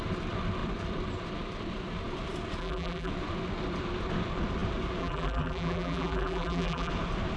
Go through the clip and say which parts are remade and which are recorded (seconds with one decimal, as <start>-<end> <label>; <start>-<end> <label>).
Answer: 0.0-2.6 recorded; 2.6-3.1 remade; 3.1-5.0 recorded; 5.0-6.9 remade; 6.9-7.4 recorded

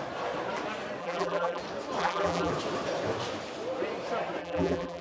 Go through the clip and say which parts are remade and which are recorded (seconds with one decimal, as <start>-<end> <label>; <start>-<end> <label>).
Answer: 0.0-1.0 recorded; 1.0-1.6 remade; 1.6-2.0 recorded; 2.0-2.5 remade; 2.5-4.4 recorded; 4.4-5.0 remade

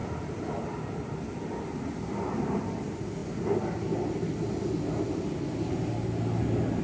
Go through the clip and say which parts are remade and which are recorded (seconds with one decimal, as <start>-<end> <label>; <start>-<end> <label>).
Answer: 0.0-3.2 recorded; 3.2-4.5 remade; 4.5-6.8 recorded

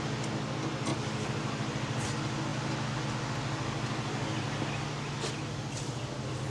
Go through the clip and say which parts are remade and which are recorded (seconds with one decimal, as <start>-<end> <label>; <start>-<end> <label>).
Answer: 0.0-6.5 recorded

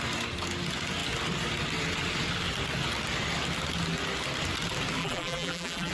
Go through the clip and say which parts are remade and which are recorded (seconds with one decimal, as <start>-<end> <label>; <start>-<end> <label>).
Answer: 0.0-5.0 recorded; 5.0-5.9 remade